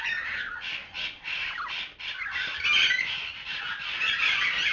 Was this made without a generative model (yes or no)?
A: yes